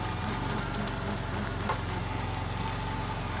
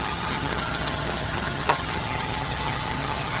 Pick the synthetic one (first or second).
second